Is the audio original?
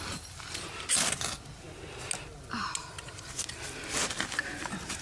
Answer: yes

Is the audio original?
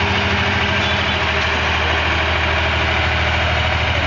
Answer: yes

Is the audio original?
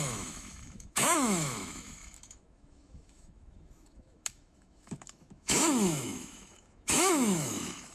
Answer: no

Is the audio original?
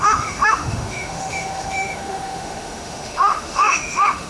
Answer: no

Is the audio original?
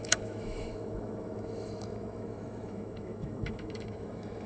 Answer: no